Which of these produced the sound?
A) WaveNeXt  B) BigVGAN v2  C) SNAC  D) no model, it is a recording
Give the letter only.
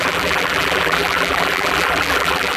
B